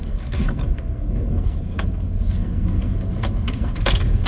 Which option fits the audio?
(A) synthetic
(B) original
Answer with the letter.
A